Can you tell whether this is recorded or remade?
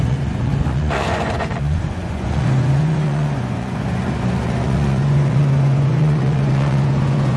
remade